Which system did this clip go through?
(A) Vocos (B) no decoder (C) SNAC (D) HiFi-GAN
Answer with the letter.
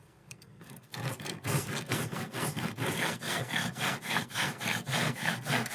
C